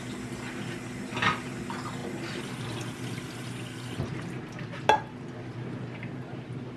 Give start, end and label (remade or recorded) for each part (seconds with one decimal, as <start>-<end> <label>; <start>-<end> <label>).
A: 0.0-6.8 recorded